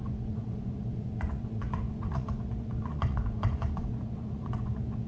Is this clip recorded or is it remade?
remade